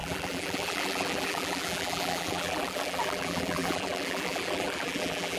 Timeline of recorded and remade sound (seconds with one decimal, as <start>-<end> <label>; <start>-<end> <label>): 0.0-5.4 remade